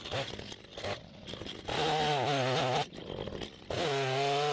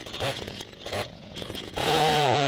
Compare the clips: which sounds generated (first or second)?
second